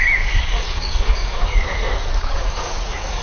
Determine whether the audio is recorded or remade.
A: remade